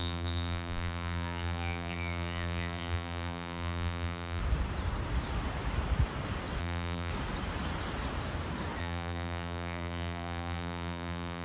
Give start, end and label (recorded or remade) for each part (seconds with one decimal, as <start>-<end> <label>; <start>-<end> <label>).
0.0-4.4 remade; 4.4-6.6 recorded; 6.6-7.1 remade; 7.1-8.8 recorded; 8.8-11.4 remade